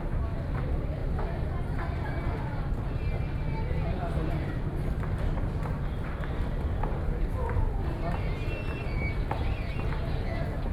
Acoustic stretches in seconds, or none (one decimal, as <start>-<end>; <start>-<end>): 0.0-10.7